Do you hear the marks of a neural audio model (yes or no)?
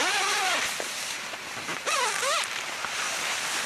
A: no